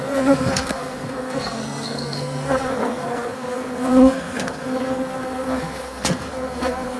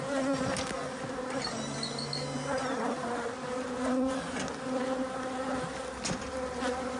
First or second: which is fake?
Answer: first